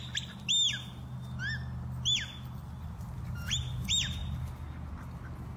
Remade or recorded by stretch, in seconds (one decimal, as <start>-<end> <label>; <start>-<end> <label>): 0.0-5.6 recorded